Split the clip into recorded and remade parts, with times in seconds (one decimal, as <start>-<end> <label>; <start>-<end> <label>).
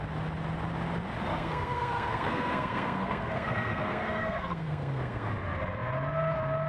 0.0-1.3 recorded; 1.3-5.3 remade; 5.3-6.7 recorded